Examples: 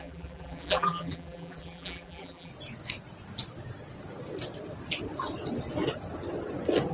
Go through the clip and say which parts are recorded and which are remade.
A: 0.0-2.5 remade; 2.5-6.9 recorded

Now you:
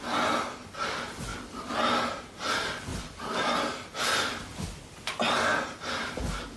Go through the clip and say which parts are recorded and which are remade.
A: 0.0-2.9 recorded; 2.9-5.1 remade; 5.1-6.6 recorded

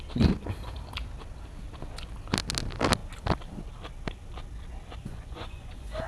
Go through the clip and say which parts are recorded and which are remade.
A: 0.0-5.0 recorded; 5.0-6.1 remade

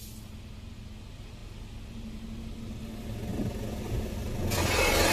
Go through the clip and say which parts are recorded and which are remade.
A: 0.0-5.1 recorded

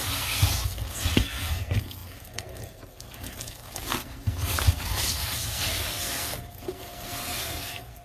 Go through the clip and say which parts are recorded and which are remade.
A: 0.0-8.0 remade